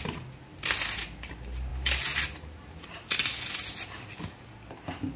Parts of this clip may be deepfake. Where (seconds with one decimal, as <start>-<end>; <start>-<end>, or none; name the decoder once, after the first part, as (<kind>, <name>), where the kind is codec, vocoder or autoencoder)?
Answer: none